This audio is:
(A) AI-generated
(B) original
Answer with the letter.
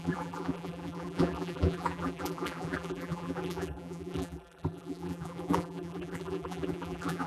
A